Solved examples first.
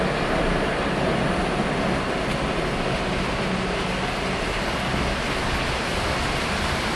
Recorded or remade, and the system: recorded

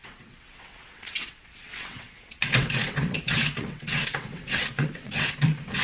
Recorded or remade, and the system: remade, vocoder, WaveNeXt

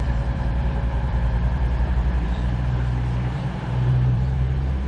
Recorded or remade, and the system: remade, vocoder, BigVGAN v2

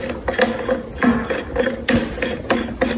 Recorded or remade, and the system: recorded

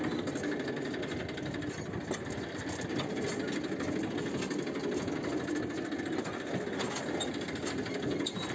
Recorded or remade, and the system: recorded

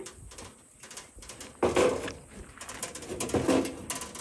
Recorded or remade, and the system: recorded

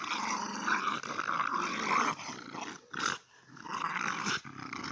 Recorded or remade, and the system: recorded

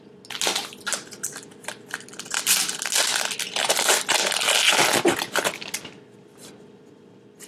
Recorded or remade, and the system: recorded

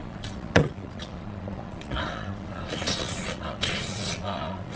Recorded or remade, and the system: remade, vocoder, Vocos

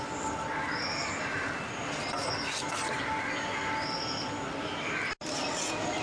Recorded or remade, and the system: recorded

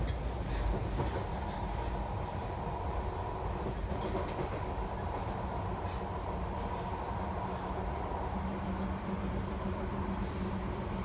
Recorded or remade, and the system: recorded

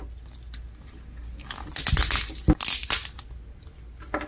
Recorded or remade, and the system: recorded